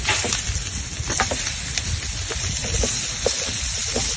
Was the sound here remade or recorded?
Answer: recorded